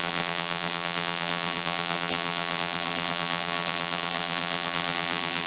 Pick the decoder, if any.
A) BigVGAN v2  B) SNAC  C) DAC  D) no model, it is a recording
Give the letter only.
A